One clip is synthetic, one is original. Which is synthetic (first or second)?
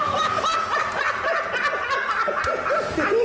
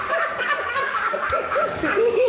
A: second